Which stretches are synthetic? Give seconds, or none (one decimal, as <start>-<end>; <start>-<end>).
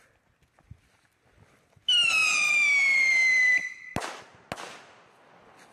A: none